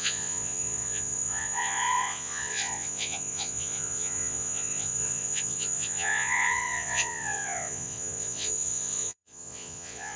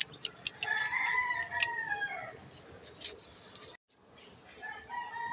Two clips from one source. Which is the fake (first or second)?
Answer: first